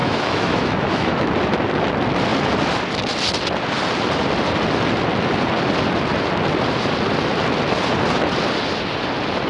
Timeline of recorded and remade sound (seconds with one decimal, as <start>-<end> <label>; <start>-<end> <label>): 0.0-1.3 remade; 1.3-9.5 recorded